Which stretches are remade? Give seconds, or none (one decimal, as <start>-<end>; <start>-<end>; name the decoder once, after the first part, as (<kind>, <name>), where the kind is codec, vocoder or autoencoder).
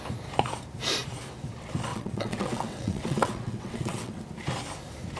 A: 1.9-4.2 (vocoder, WaveNeXt)